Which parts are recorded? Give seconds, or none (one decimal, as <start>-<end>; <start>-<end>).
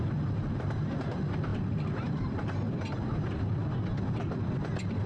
0.0-1.5; 3.6-5.1